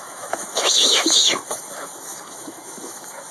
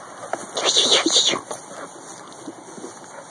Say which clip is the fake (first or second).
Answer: first